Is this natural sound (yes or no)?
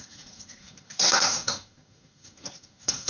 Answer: no